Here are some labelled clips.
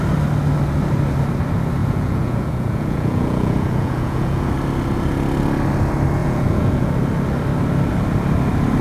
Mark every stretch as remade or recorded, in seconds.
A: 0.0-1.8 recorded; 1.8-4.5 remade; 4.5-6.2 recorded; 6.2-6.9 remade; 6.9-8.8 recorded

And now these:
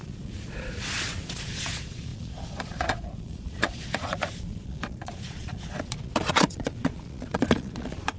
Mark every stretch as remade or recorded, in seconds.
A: 0.0-8.2 remade